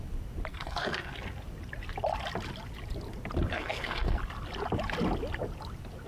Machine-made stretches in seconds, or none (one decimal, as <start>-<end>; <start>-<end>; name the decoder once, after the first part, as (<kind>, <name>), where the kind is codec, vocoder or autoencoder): 0.5-1.1 (codec, SNAC); 3.5-4.2